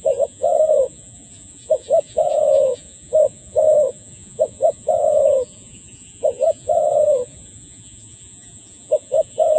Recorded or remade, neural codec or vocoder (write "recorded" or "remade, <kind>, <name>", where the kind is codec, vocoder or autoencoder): remade, vocoder, Vocos